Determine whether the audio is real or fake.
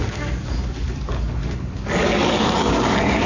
fake